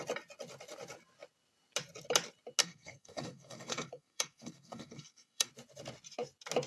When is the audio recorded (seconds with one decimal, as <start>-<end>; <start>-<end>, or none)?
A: 0.0-2.6; 5.5-6.7